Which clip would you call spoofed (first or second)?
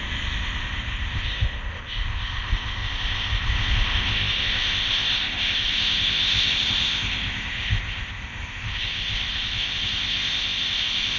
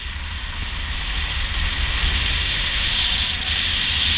first